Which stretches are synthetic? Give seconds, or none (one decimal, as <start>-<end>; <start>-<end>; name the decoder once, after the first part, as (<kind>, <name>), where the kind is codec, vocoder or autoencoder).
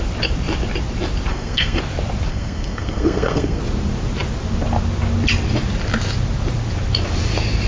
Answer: 1.3-1.8 (codec, SNAC); 2.3-3.6